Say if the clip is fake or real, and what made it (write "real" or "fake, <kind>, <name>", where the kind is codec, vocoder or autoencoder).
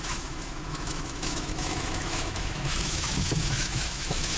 fake, autoencoder, DAC-VAE